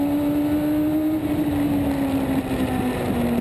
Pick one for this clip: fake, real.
real